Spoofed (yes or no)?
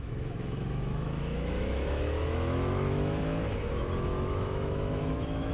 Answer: yes